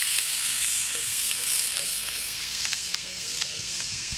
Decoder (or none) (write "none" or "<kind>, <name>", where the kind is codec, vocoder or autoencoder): codec, SNAC